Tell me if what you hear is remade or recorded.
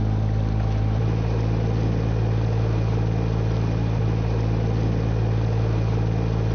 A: recorded